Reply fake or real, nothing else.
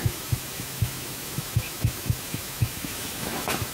fake